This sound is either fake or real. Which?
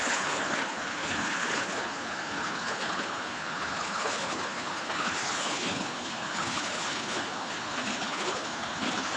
fake